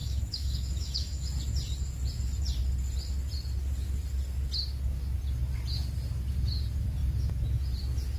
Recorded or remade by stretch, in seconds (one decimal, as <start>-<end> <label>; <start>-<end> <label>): 0.0-1.3 remade; 1.3-8.2 recorded